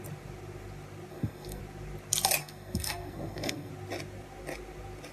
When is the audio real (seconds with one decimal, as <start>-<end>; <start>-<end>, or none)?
0.0-1.1; 1.6-2.4; 3.7-5.1